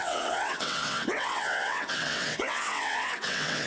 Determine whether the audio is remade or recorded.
remade